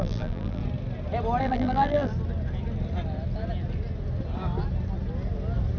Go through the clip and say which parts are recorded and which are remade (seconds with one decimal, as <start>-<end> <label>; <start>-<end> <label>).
0.0-0.6 remade; 0.6-1.4 recorded; 1.4-2.1 remade; 2.1-5.8 recorded